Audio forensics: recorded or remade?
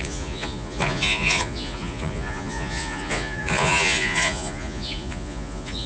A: remade